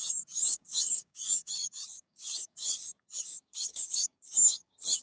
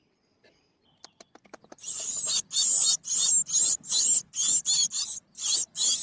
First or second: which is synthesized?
first